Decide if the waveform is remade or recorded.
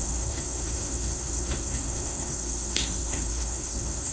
remade